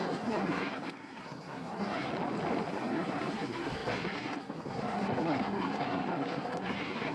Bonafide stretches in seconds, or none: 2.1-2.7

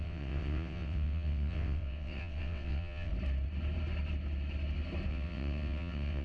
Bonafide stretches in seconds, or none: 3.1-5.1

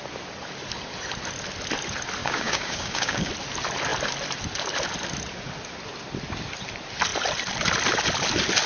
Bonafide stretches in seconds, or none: 0.0-2.2; 3.3-8.7

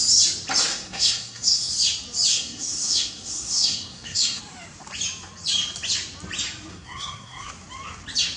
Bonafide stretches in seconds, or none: 0.0-0.7; 1.7-2.3; 4.4-6.7; 7.5-8.4

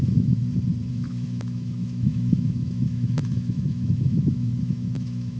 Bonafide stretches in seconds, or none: 0.4-0.9

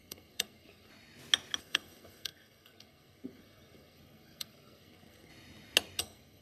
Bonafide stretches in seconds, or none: 0.9-1.6; 5.3-6.0

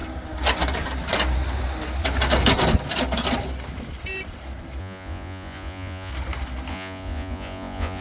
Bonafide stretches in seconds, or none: 0.0-4.8; 6.1-6.7

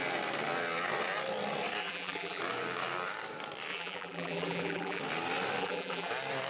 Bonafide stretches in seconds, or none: 0.0-1.8; 2.4-3.7; 5.0-5.6; 6.1-6.5